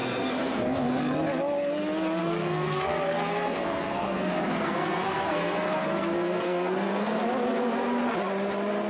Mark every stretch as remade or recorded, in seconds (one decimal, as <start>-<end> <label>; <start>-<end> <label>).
0.0-1.0 remade; 1.0-2.2 recorded; 2.2-7.2 remade; 7.2-8.9 recorded